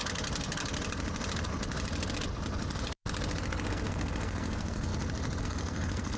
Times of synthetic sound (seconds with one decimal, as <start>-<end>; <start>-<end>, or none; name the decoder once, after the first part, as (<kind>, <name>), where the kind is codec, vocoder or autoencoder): 3.7-4.9 (codec, SNAC); 5.4-6.2